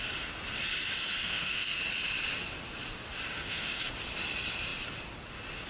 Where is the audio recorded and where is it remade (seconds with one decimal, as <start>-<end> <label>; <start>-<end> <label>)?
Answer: 0.0-1.2 recorded; 1.2-1.8 remade; 1.8-3.3 recorded; 3.3-3.8 remade; 3.8-5.7 recorded